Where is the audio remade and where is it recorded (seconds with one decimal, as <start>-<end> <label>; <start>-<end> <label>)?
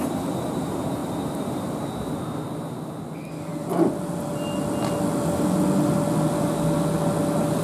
0.0-7.6 recorded